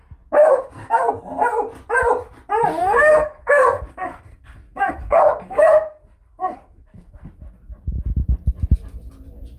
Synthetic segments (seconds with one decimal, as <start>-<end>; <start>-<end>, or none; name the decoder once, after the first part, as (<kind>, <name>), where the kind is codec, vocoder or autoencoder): 0.4-1.1 (codec, SNAC); 2.8-7.3